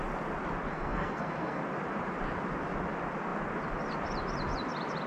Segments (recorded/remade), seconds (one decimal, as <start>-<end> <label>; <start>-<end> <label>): 0.0-0.7 recorded; 0.7-1.6 remade; 1.6-5.1 recorded